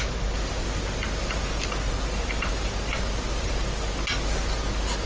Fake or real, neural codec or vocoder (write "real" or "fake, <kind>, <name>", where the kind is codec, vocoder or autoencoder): real